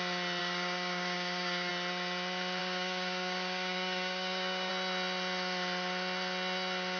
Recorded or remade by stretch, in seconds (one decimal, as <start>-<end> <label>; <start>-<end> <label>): 0.0-0.4 recorded; 0.4-1.7 remade; 1.7-2.6 recorded; 2.6-4.7 remade; 4.7-7.0 recorded